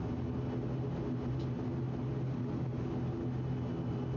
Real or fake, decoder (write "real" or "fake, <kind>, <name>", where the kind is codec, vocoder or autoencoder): real